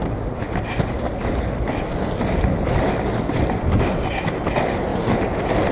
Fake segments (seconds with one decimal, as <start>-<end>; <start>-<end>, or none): 0.0-1.0; 4.9-5.7